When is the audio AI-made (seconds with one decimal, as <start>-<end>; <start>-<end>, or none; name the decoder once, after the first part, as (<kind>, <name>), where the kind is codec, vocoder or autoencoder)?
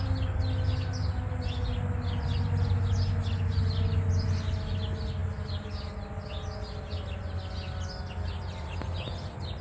none